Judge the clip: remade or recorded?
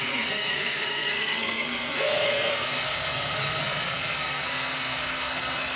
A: remade